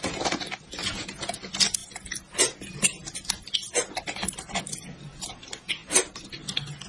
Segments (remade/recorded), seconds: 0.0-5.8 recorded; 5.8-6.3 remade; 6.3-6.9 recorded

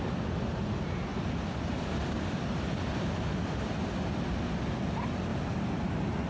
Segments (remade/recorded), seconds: 0.0-5.3 recorded; 5.3-6.3 remade

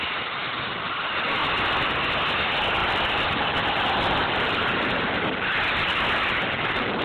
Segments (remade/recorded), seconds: 0.0-2.8 recorded; 2.8-7.0 remade

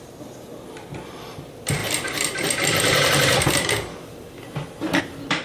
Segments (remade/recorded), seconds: 0.0-5.4 remade

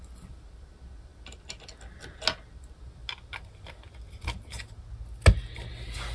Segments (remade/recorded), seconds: 0.0-6.1 recorded